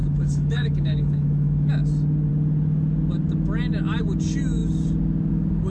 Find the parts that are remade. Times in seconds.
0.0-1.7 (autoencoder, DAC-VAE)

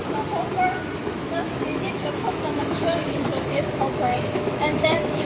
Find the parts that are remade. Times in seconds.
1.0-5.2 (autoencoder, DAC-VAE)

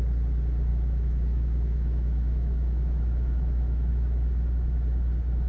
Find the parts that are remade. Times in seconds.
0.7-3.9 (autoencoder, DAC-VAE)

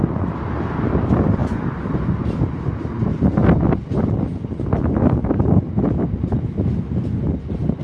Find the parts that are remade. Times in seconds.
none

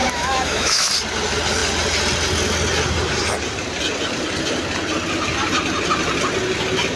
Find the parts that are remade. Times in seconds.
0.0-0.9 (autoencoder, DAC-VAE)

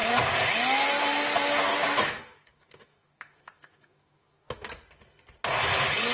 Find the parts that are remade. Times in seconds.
1.7-4.7 (autoencoder, DAC-VAE)

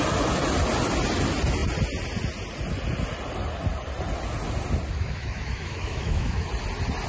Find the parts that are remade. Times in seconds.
4.9-6.5 (autoencoder, DAC-VAE)